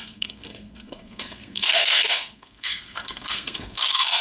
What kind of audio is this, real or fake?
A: fake